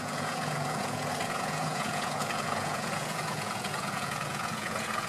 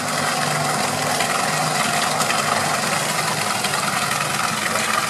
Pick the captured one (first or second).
second